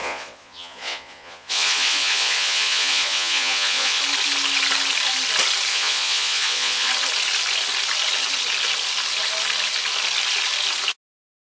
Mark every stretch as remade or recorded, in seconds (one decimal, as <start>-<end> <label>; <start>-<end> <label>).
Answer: 0.0-4.0 remade; 4.0-5.7 recorded; 5.7-6.9 remade; 6.9-11.5 recorded